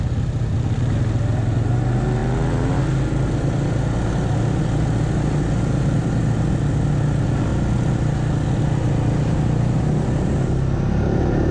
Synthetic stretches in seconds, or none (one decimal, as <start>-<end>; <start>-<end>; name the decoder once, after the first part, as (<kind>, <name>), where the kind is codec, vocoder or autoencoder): none